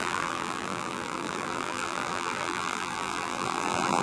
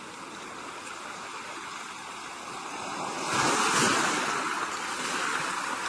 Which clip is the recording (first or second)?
second